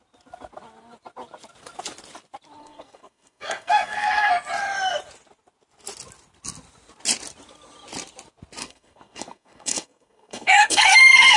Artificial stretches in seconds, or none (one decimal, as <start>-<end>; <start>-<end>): 2.6-4.3; 8.6-11.4